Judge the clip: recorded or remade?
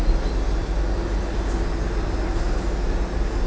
recorded